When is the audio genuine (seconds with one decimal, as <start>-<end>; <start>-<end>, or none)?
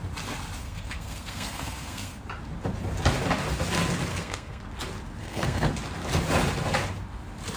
0.0-0.6; 2.2-4.1; 4.6-5.2; 5.7-7.6